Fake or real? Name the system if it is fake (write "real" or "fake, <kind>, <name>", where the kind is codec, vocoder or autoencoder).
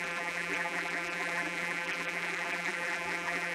fake, vocoder, BigVGAN v2